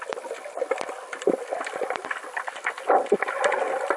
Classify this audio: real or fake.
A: real